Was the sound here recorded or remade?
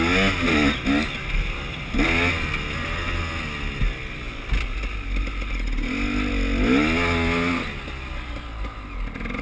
recorded